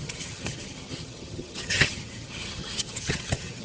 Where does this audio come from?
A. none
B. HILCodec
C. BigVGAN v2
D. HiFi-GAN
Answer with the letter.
D